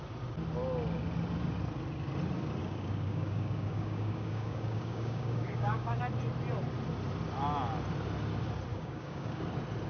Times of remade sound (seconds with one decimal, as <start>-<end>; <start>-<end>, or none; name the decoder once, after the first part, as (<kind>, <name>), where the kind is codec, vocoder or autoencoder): 2.6-6.0 (codec, DAC); 8.7-9.4

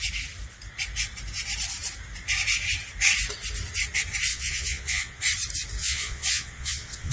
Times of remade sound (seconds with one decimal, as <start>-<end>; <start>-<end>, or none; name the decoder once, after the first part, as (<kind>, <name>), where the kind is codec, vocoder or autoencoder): 4.3-5.2 (vocoder, Vocos); 5.8-7.1

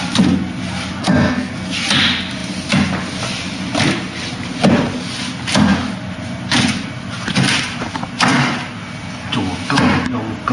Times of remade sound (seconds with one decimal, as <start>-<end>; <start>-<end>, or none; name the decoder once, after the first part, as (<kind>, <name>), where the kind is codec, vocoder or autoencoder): 1.0-1.5 (codec, SNAC)

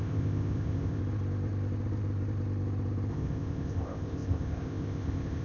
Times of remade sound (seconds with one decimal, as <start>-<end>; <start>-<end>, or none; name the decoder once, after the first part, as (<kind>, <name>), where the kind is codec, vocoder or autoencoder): 0.0-1.0 (codec, ZipCodec); 3.1-5.4

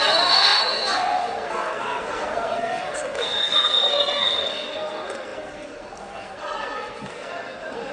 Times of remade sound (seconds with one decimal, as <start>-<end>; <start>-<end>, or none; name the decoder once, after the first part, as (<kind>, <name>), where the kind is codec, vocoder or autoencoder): 0.0-7.9 (codec, SNAC)

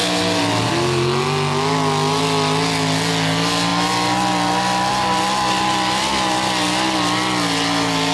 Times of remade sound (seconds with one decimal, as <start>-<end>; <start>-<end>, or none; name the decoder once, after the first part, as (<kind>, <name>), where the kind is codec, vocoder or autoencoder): none